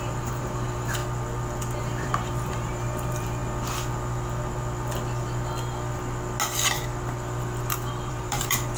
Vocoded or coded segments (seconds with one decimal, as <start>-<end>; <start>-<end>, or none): 0.0-1.0; 1.8-3.4; 8.1-8.8